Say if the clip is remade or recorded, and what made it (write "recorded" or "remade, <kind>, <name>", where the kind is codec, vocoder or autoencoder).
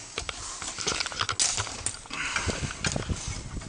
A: recorded